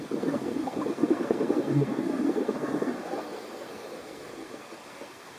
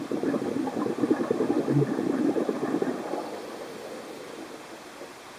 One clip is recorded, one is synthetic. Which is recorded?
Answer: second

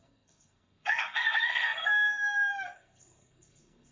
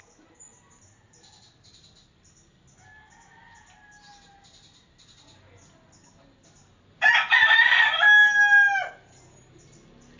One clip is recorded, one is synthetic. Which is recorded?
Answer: second